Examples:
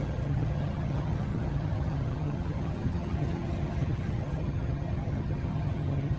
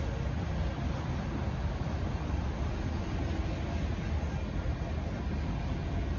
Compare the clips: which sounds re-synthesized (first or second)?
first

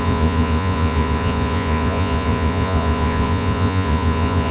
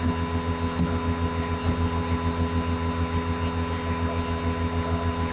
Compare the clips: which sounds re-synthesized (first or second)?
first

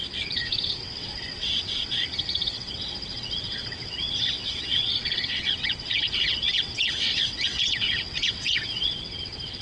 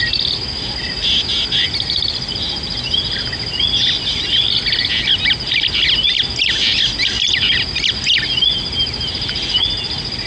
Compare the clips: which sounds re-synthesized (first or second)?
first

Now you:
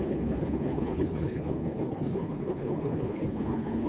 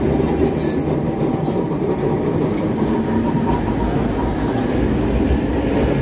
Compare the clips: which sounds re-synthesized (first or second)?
first